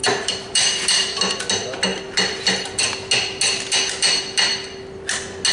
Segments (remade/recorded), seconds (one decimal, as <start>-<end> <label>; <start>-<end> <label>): 0.0-1.4 remade; 1.4-5.5 recorded